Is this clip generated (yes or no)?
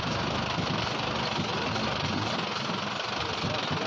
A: no